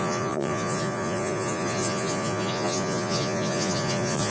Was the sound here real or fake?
fake